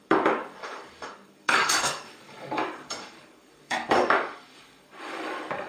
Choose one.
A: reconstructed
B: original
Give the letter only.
A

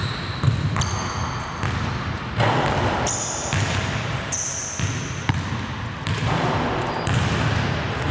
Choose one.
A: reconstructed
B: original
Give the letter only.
B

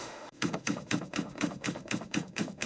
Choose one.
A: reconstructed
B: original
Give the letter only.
A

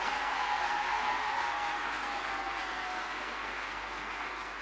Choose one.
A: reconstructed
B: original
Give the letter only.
A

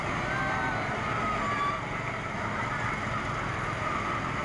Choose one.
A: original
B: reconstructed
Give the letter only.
A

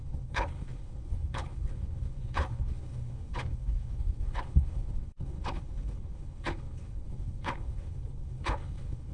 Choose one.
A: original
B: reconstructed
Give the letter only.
B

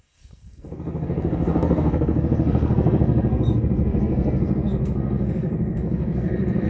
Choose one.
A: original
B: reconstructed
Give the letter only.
B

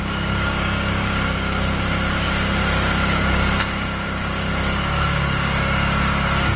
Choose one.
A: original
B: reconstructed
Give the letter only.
B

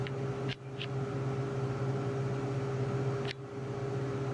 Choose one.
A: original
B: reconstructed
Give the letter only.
A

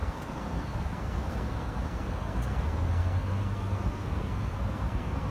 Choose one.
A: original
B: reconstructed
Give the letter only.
B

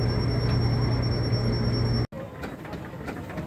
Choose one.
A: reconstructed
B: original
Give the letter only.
B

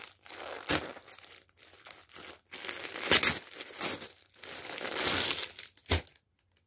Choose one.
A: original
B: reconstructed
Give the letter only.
A